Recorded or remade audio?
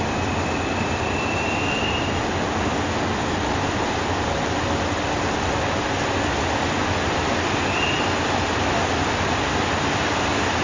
recorded